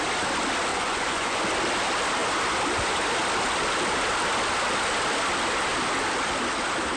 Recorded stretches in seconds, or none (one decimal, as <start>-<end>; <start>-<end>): 0.0-0.7; 1.4-7.0